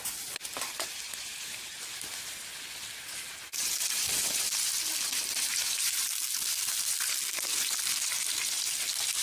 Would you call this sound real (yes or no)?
yes